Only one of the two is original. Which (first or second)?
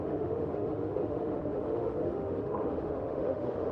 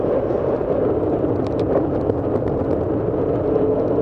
second